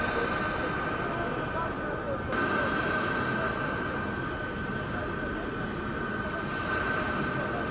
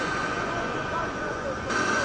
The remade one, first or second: second